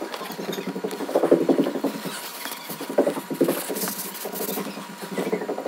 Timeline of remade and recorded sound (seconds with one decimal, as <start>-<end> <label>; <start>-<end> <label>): 0.0-2.3 recorded; 2.3-3.2 remade; 3.2-5.7 recorded